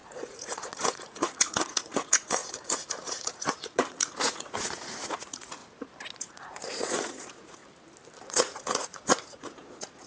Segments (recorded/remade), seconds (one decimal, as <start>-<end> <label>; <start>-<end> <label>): 0.0-5.6 remade; 5.6-6.2 recorded; 6.2-7.6 remade; 7.6-8.3 recorded; 8.3-10.1 remade